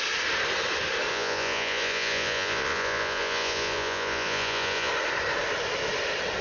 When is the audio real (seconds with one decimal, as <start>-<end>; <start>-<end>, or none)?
0.0-1.1; 4.9-6.4